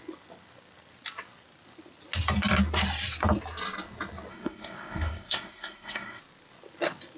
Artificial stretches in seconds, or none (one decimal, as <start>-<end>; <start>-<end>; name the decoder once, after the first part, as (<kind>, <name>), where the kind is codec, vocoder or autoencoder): 4.3-6.2 (codec, SNAC)